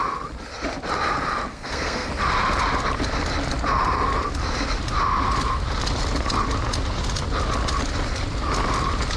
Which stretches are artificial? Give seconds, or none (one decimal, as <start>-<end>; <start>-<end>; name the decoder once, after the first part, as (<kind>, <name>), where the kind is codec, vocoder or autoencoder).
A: 1.5-2.1 (codec, SNAC)